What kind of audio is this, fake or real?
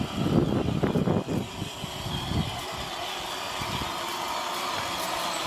real